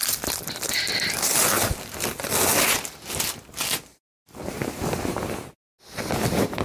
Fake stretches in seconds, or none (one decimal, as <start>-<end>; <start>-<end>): none